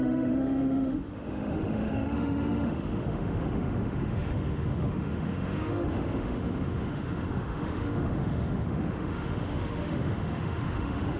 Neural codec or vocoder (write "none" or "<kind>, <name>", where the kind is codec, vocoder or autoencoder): autoencoder, DAC-VAE